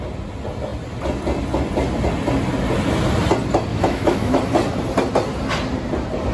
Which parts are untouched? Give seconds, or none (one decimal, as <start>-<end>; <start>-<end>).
0.0-3.7; 4.4-6.3